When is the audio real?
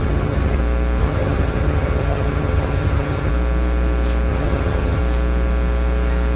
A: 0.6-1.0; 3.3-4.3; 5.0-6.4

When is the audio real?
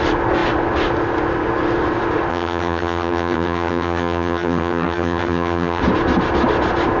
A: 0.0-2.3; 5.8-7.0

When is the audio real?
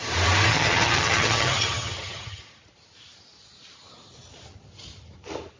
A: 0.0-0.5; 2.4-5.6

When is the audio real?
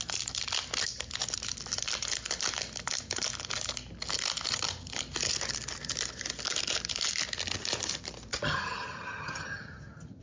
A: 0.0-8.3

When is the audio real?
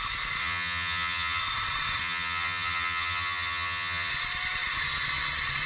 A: 0.0-0.4; 1.4-2.0; 4.1-5.7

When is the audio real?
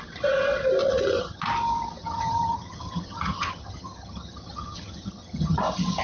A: 0.0-0.8; 1.4-2.0; 5.6-6.0